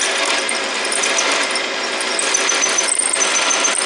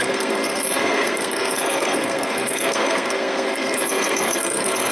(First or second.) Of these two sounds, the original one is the first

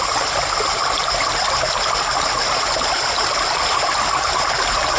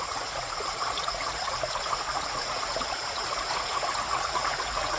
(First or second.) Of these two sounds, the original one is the first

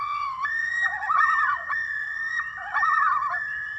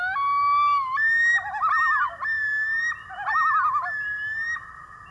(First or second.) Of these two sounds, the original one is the second